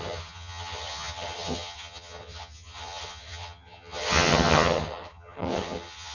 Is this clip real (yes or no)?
no